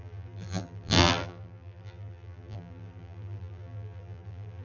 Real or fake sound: fake